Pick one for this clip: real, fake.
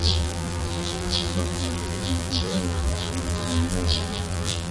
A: fake